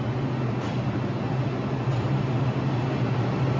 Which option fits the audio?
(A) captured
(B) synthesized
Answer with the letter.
A